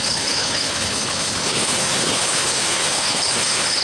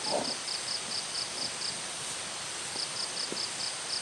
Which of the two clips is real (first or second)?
second